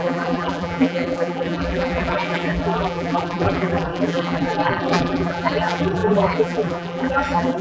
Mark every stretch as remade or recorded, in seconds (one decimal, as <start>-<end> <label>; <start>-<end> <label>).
0.0-7.6 remade